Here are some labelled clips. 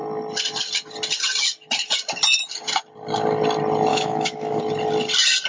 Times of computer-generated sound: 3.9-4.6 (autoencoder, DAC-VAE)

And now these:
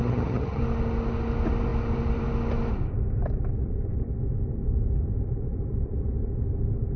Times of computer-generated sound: 0.0-0.6 (vocoder, HiFi-GAN)

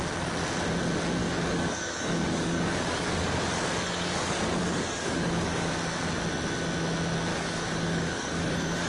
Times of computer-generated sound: 1.2-5.7 (codec, DAC); 7.3-8.9

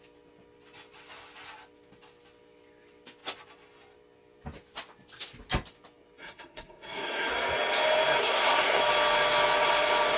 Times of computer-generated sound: 6.2-7.3 (codec, SNAC); 8.2-8.8